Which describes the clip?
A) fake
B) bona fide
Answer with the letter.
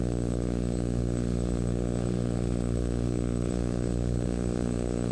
A